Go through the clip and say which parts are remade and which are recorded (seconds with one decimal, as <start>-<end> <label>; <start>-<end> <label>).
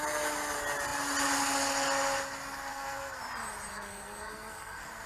0.0-2.7 recorded; 2.7-3.2 remade; 3.2-3.7 recorded; 3.7-5.1 remade